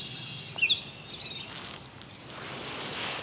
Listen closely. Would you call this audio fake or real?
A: real